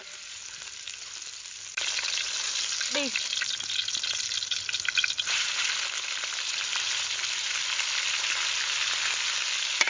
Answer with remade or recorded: recorded